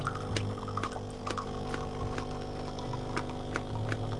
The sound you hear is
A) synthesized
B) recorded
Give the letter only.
B